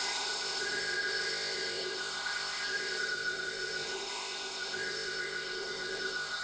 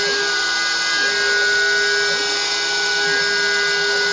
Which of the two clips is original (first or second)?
second